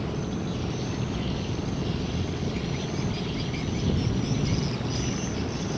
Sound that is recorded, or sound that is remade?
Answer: recorded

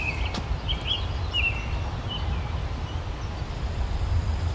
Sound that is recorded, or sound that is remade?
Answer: recorded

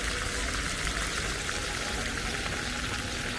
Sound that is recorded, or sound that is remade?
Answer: recorded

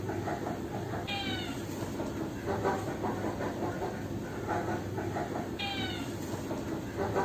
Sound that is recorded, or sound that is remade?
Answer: recorded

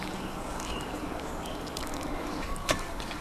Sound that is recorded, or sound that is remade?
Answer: remade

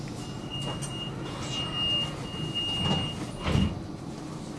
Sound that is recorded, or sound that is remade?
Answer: recorded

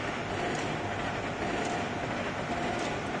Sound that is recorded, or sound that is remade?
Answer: recorded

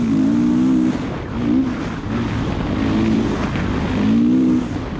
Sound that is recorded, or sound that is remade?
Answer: recorded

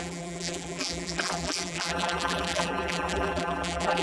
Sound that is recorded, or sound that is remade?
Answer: remade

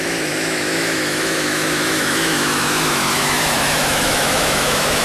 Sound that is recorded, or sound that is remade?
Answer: remade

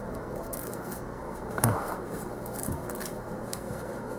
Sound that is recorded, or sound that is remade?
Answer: remade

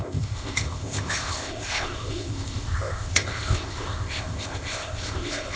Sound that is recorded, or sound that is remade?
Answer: remade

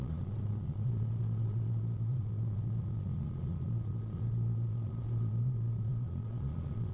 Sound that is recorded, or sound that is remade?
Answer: remade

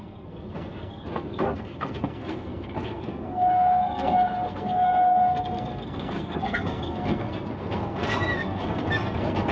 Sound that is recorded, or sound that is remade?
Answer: remade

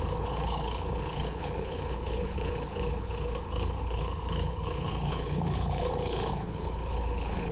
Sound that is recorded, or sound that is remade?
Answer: remade